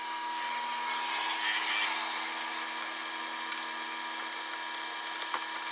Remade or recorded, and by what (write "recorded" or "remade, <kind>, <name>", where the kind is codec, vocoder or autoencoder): recorded